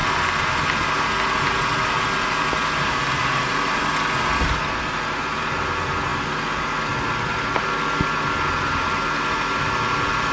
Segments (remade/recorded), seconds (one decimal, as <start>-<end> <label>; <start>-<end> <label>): 0.0-3.2 recorded; 3.2-3.8 remade; 3.8-10.3 recorded